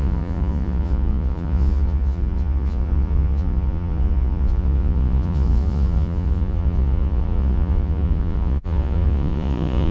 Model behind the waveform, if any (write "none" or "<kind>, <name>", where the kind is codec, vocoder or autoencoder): vocoder, Vocos